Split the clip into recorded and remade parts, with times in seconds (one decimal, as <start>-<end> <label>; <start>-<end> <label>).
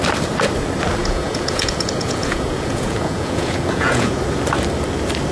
0.0-1.0 recorded; 1.0-4.2 remade; 4.2-5.3 recorded